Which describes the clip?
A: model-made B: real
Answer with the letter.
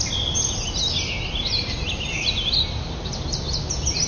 B